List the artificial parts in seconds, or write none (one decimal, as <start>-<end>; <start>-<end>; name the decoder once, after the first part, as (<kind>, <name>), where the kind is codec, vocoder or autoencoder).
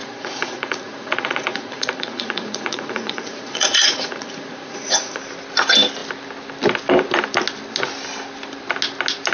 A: 0.0-5.2 (vocoder, Vocos)